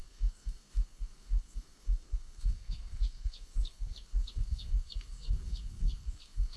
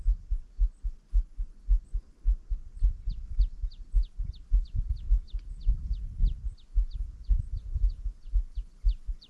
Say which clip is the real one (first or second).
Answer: second